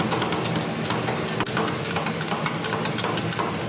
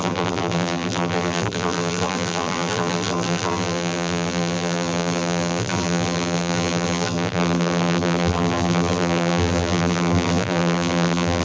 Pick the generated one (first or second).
second